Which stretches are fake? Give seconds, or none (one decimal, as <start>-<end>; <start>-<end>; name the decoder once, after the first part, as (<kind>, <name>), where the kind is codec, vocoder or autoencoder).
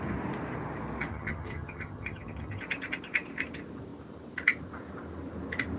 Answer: 1.1-2.6 (vocoder, HiFi-GAN)